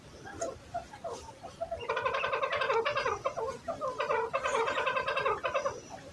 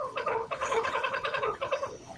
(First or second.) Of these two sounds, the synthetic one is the second